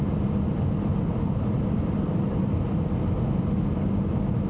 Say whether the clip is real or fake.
real